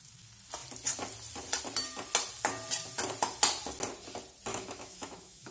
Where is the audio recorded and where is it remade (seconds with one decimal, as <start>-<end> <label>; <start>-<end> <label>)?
0.0-4.5 recorded; 4.5-5.5 remade